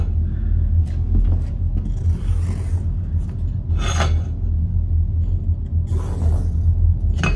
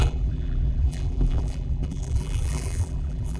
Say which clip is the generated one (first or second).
second